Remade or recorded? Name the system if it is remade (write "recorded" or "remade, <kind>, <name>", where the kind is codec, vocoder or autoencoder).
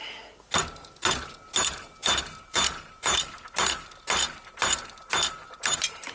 recorded